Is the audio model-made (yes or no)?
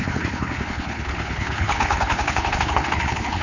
yes